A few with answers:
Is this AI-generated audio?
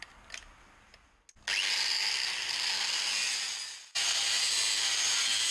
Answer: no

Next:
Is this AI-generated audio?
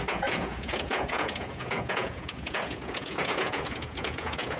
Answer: yes